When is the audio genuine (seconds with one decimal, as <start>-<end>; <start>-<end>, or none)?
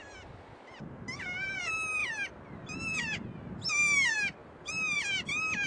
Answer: 0.0-4.4; 5.0-5.7